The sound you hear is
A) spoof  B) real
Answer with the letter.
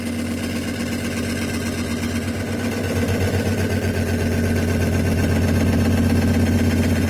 B